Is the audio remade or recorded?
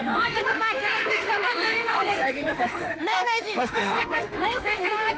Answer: remade